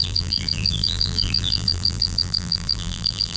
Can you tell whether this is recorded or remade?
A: remade